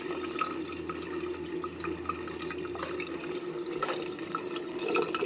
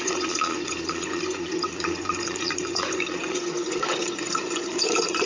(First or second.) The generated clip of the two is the second